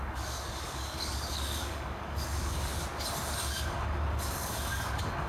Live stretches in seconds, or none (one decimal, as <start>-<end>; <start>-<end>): 2.7-3.5